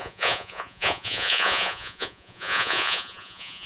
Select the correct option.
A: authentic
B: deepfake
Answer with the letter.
B